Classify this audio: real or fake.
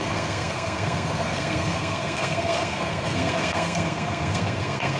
fake